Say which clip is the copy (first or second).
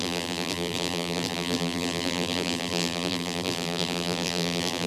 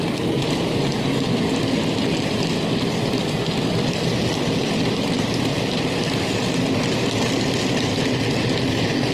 first